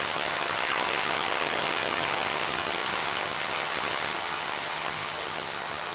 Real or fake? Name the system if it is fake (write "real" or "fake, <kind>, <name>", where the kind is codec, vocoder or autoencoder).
fake, vocoder, HiFi-GAN